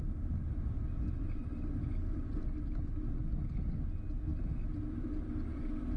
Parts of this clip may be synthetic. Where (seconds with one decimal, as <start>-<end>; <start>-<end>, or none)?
none